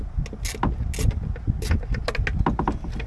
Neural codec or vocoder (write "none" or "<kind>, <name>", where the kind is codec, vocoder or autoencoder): none